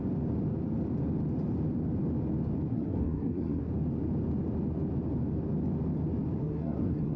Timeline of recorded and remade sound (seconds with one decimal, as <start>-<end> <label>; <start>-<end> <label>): 0.0-2.7 recorded; 2.7-3.7 remade; 3.7-6.4 recorded; 6.4-7.2 remade